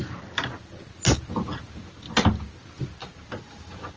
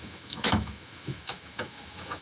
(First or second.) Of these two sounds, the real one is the first